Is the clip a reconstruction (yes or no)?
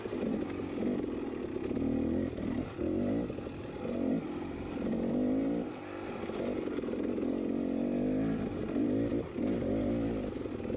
no